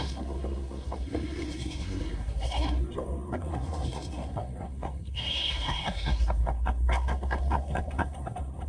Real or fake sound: fake